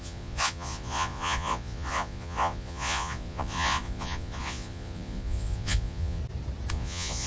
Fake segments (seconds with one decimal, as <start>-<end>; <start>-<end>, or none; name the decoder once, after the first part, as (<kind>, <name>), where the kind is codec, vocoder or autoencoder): 0.0-6.2 (vocoder, Vocos); 6.7-7.3

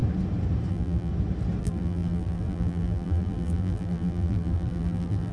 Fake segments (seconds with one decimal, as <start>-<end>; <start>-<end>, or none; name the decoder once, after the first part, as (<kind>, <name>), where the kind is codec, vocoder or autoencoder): 0.7-1.1 (vocoder, BigVGAN v2); 1.6-5.3

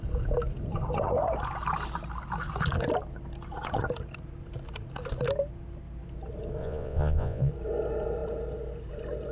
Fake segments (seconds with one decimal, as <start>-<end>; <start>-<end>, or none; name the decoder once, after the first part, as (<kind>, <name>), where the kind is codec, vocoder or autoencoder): 6.6-7.5 (vocoder, Vocos)

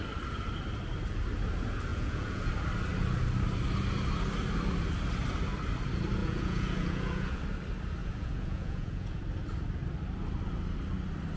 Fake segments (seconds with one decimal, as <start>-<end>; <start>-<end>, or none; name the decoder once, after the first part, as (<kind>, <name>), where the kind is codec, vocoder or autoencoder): 1.9-2.5 (vocoder, Vocos); 6.2-7.4; 8.0-9.2